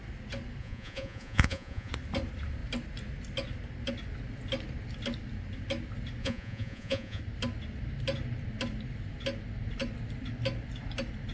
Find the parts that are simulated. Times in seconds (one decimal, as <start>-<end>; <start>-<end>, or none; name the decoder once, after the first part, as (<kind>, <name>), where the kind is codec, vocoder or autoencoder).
0.6-1.9 (vocoder, Vocos); 6.2-7.2